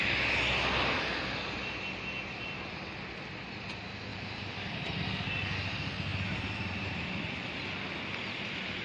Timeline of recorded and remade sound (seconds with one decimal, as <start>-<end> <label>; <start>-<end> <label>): 0.0-4.1 recorded; 4.1-5.0 remade; 5.0-6.1 recorded; 6.1-7.5 remade; 7.5-8.8 recorded